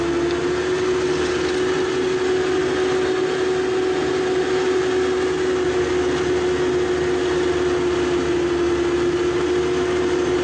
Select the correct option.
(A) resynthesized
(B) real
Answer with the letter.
B